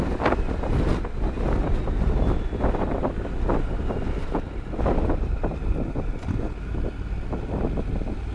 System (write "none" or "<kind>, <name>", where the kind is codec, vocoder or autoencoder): none